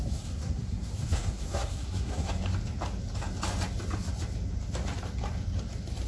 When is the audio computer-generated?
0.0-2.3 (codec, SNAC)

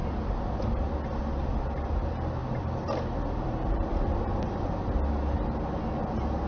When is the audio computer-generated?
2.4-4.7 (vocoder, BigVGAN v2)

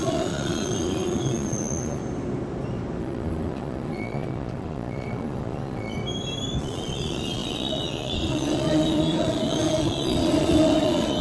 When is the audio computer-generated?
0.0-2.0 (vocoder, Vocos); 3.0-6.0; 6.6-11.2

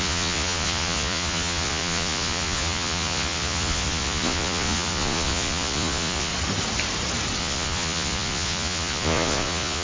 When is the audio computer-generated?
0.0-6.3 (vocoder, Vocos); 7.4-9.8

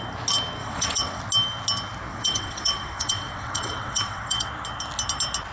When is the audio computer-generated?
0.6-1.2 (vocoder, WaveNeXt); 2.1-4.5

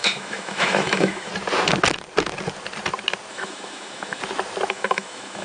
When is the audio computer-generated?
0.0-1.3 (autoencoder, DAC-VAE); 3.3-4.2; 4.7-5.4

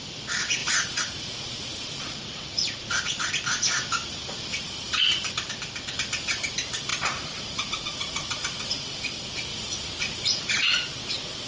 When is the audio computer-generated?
0.6-3.3 (vocoder, Vocos); 6.9-9.0; 9.5-10.5